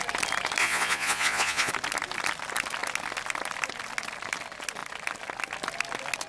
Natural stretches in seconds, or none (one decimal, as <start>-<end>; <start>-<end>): 0.0-0.6; 1.7-6.3